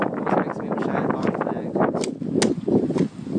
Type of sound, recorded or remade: recorded